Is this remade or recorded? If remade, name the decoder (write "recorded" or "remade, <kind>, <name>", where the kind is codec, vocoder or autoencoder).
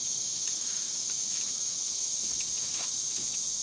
remade, autoencoder, DAC-VAE